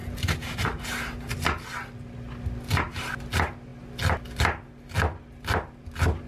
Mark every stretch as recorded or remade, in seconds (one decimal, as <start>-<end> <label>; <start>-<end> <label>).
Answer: 0.0-6.3 recorded

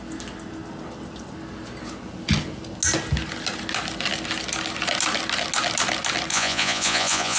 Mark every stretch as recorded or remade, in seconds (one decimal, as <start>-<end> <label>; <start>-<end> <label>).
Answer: 0.0-6.3 recorded; 6.3-7.4 remade

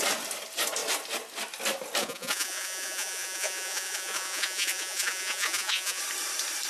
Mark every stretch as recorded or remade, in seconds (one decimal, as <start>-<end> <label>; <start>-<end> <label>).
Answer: 0.0-2.0 recorded; 2.0-6.0 remade; 6.0-6.7 recorded

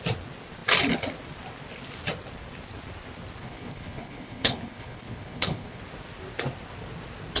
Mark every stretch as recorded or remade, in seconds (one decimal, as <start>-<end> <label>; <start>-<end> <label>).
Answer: 0.0-3.4 recorded; 3.4-5.8 remade; 5.8-7.4 recorded

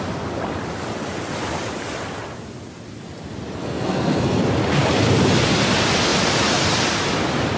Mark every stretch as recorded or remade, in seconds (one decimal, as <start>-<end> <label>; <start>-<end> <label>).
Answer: 0.0-3.6 recorded; 3.6-4.4 remade; 4.4-7.6 recorded